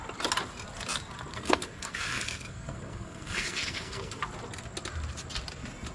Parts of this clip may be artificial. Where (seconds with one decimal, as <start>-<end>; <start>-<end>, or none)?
1.3-4.2